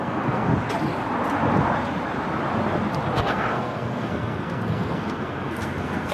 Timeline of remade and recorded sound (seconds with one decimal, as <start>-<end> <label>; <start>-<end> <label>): 0.0-0.5 remade; 0.5-3.2 recorded; 3.2-6.1 remade